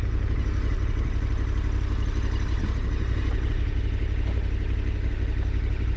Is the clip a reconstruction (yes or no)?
no